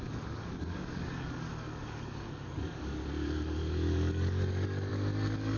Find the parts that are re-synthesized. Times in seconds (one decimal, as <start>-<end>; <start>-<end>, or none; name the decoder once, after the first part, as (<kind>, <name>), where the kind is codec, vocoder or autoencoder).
0.0-5.6 (codec, DAC)